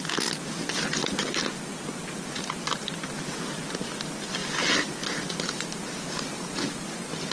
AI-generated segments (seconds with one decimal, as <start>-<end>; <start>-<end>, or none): none